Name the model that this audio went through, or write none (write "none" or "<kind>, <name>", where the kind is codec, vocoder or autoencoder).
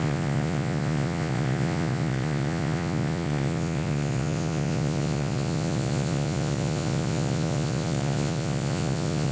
vocoder, Vocos